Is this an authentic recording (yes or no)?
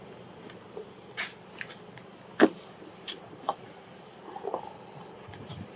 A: yes